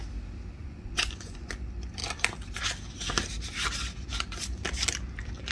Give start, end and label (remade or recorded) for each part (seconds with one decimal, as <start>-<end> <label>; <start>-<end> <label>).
0.0-0.6 recorded; 0.6-1.5 remade; 1.5-5.5 recorded